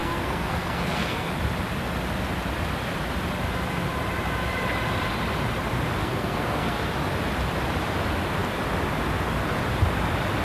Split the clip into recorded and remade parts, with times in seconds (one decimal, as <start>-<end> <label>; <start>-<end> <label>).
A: 0.0-1.4 remade; 1.4-6.0 recorded; 6.0-6.9 remade; 6.9-10.4 recorded